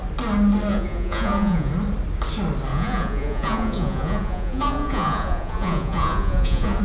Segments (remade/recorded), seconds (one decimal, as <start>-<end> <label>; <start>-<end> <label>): 0.0-0.7 recorded; 0.7-1.7 remade; 1.7-2.7 recorded; 2.7-6.8 remade